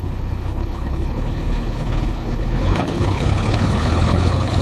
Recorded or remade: remade